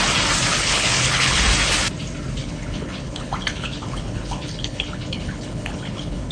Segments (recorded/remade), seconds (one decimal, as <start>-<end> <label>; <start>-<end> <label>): 0.0-0.5 recorded; 0.5-1.4 remade; 1.4-2.4 recorded; 2.4-6.3 remade